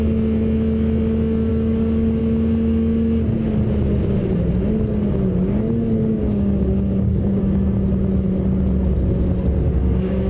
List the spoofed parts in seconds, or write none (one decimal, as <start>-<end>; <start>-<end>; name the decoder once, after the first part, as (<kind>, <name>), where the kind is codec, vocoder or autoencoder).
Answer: 1.5-2.2 (codec, DAC); 6.0-7.4; 9.8-10.3

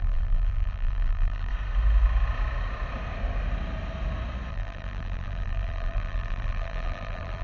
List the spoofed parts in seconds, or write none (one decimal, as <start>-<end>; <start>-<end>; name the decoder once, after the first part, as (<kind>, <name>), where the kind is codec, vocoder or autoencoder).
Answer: 0.0-1.5 (vocoder, BigVGAN v2); 4.5-7.4

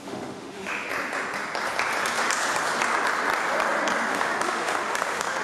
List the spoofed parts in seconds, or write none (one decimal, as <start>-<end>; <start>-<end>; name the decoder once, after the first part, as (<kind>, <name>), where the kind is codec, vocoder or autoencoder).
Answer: 0.0-0.9 (autoencoder, DAC-VAE); 4.1-5.4

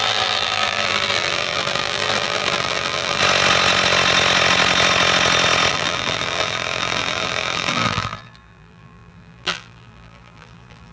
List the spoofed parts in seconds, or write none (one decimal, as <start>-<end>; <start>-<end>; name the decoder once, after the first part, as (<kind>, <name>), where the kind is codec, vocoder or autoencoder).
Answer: 0.0-3.2 (vocoder, BigVGAN v2); 5.7-10.9

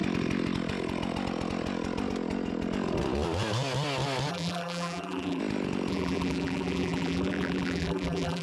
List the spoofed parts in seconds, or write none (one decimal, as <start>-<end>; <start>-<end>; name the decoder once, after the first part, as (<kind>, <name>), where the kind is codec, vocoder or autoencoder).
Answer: 4.3-5.4 (vocoder, BigVGAN v2); 5.9-8.4

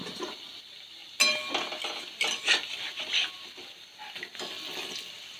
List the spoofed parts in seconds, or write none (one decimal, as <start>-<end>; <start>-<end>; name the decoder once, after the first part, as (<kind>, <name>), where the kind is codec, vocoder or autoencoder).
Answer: none